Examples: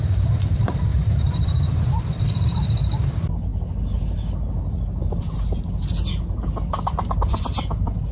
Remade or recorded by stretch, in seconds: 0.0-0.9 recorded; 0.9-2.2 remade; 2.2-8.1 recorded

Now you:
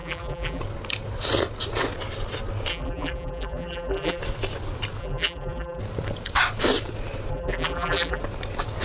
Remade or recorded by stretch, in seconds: 0.0-0.6 remade; 0.6-2.7 recorded; 2.7-4.2 remade; 4.2-5.0 recorded; 5.0-5.8 remade; 5.8-7.3 recorded; 7.3-8.2 remade; 8.2-8.8 recorded

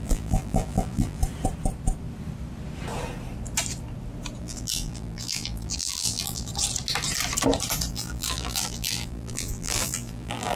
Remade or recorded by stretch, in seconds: 0.0-1.2 remade; 1.2-4.4 recorded; 4.4-6.5 remade; 6.5-7.9 recorded; 7.9-10.6 remade

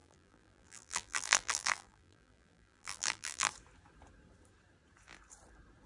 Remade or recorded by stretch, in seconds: 0.0-3.5 remade; 3.5-5.9 recorded

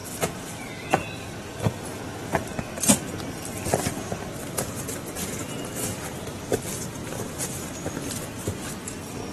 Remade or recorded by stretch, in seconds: 0.0-9.3 recorded

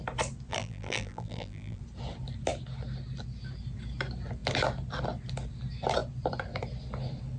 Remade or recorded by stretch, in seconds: 0.0-0.5 recorded; 0.5-1.8 remade; 1.8-7.4 recorded